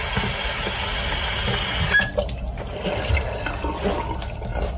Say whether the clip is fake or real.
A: real